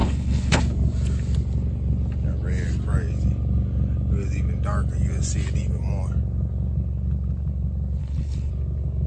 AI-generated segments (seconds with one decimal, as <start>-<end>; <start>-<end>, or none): 0.0-0.6; 8.0-8.5